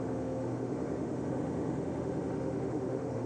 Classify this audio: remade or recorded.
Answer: remade